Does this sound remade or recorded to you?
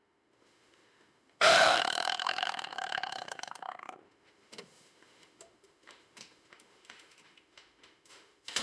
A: remade